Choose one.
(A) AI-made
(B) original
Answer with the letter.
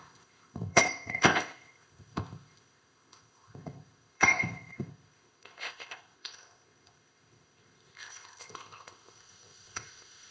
A